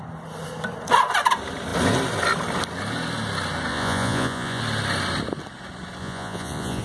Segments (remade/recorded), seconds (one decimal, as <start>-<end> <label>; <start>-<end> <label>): 0.0-3.7 recorded; 3.7-4.6 remade; 4.6-6.0 recorded; 6.0-6.8 remade